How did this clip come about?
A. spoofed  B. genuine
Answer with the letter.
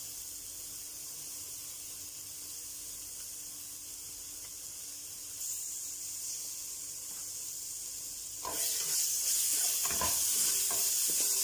B